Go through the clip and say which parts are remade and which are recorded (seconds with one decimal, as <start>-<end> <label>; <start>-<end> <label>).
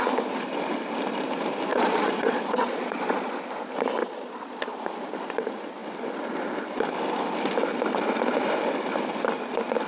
0.0-1.7 recorded; 1.7-3.3 remade; 3.3-4.0 recorded; 4.0-4.6 remade; 4.6-9.9 recorded